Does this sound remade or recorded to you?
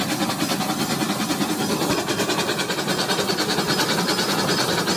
recorded